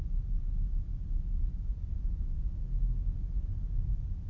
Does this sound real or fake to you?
real